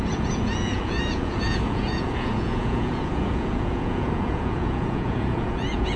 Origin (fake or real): fake